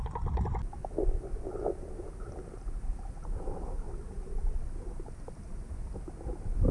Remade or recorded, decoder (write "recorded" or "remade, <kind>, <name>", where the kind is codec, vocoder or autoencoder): recorded